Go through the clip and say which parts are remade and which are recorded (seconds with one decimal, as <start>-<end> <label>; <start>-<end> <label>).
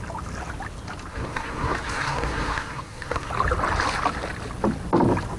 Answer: 0.0-1.1 recorded; 1.1-3.3 remade; 3.3-5.4 recorded